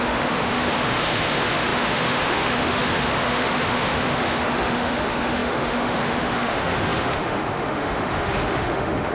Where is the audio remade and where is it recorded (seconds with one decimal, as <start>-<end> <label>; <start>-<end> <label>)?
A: 0.0-9.1 remade